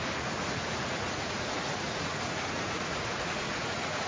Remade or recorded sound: remade